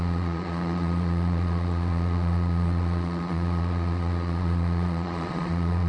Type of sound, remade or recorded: remade